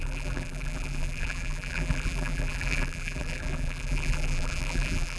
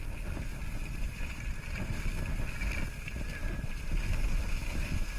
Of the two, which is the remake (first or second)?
first